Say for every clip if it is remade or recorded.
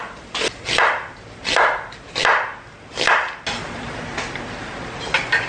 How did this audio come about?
recorded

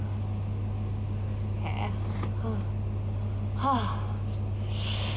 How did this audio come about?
recorded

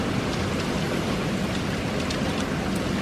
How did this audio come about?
recorded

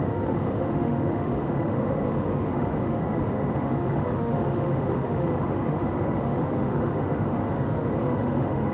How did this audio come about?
remade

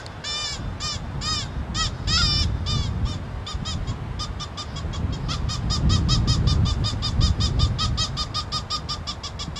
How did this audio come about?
recorded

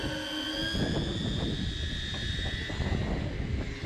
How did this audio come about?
recorded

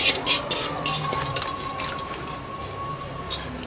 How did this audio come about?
recorded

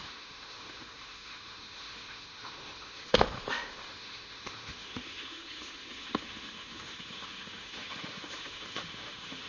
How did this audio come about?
remade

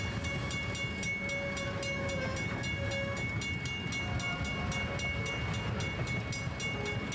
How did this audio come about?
recorded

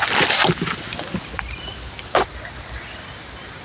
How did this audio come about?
recorded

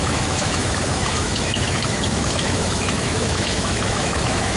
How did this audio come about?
remade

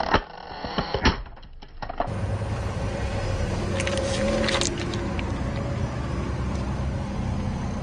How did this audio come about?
recorded